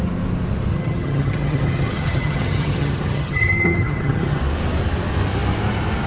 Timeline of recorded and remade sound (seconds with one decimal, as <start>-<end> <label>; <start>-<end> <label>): 0.0-0.7 recorded; 0.7-4.4 remade; 4.4-6.1 recorded